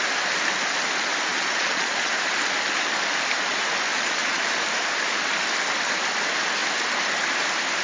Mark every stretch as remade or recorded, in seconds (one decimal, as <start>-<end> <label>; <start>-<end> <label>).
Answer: 0.0-1.3 recorded; 1.3-2.1 remade; 2.1-3.9 recorded; 3.9-4.4 remade; 4.4-7.8 recorded